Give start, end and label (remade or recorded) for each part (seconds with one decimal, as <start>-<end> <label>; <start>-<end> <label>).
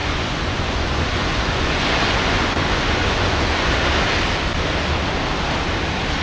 0.0-3.7 remade; 3.7-6.2 recorded